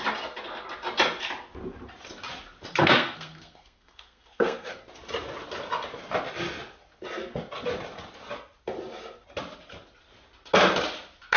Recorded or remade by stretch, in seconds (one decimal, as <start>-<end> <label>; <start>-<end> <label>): 0.0-2.8 recorded; 2.8-4.8 remade; 4.8-11.4 recorded